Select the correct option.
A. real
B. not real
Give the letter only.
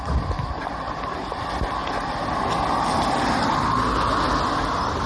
A